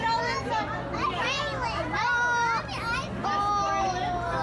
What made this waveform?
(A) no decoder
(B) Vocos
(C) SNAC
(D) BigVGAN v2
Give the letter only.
A